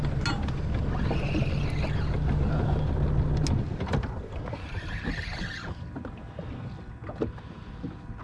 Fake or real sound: real